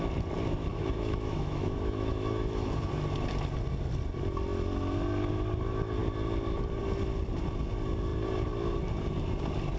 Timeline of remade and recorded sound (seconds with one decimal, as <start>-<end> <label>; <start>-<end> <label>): 0.0-0.7 recorded; 0.7-2.9 remade; 2.9-9.8 recorded